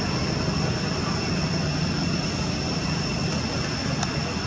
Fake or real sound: real